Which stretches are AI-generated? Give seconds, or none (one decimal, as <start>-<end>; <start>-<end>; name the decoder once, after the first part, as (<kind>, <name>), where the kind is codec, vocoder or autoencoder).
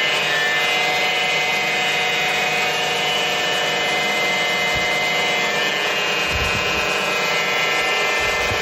none